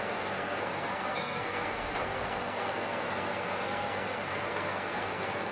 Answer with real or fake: fake